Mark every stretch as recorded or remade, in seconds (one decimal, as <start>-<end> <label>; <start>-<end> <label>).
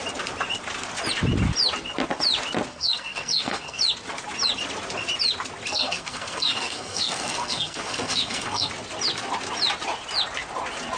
0.0-2.7 recorded; 2.7-3.8 remade; 3.8-5.7 recorded; 5.7-8.7 remade; 8.7-11.0 recorded